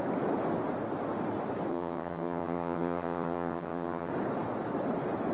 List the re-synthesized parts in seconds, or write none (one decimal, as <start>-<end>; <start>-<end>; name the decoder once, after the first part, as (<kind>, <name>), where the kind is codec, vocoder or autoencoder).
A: 1.7-4.1 (vocoder, HiFi-GAN)